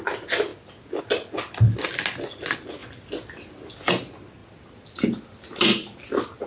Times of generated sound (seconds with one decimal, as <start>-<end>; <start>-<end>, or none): 4.4-5.4